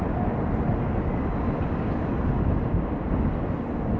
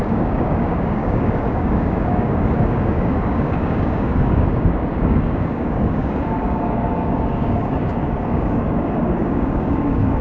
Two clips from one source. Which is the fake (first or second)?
second